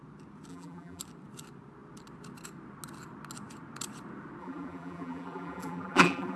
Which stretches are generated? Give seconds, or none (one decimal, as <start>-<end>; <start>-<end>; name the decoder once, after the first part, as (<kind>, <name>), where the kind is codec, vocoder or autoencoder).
0.5-1.0 (vocoder, BigVGAN v2); 4.4-6.4